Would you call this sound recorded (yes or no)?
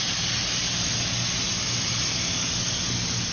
yes